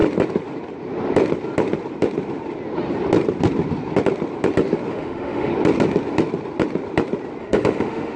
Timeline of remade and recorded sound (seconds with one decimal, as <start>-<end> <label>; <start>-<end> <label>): 0.0-4.9 recorded; 4.9-5.5 remade; 5.5-7.4 recorded; 7.4-8.2 remade